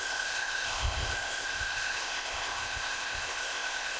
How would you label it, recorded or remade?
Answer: remade